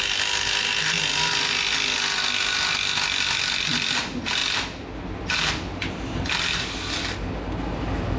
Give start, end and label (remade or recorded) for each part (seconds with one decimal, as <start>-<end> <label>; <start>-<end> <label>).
0.0-8.2 recorded

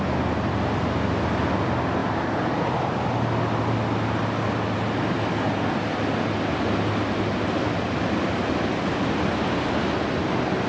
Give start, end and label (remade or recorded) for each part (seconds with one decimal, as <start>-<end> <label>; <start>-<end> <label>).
0.0-10.7 recorded

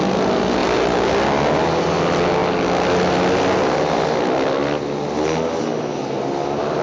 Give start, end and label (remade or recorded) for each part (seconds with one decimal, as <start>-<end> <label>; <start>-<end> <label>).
0.0-6.8 recorded

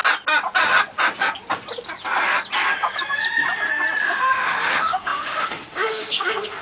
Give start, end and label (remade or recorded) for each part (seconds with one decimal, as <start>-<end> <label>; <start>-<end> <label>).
0.0-4.0 recorded; 4.0-6.6 remade

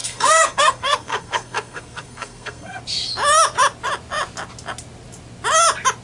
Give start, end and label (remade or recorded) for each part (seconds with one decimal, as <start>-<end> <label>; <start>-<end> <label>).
0.0-2.8 remade; 2.8-6.0 recorded